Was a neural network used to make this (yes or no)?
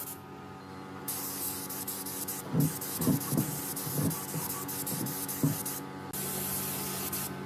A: no